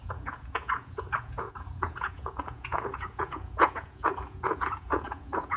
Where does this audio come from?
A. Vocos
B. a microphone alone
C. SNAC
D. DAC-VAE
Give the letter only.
A